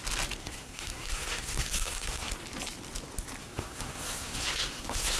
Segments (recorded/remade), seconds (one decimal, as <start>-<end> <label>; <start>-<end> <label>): 0.0-0.4 recorded; 0.4-2.3 remade; 2.3-3.4 recorded; 3.4-5.2 remade